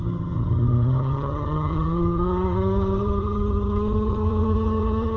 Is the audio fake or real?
fake